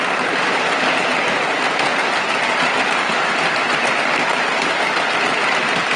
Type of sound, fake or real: real